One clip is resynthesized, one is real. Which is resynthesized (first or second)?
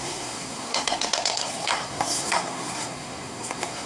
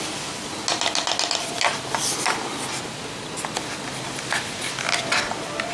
first